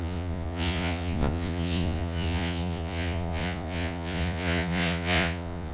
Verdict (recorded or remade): remade